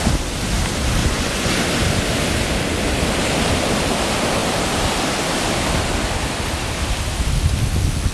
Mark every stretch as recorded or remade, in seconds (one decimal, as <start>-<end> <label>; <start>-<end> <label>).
0.0-1.0 recorded; 1.0-1.5 remade; 1.5-8.1 recorded